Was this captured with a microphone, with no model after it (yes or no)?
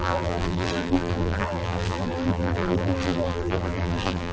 no